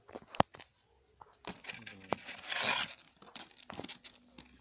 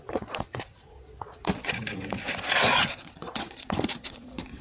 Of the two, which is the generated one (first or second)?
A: second